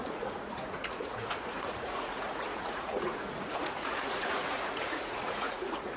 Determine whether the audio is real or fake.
fake